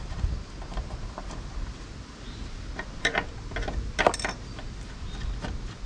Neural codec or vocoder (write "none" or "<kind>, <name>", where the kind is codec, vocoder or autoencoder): none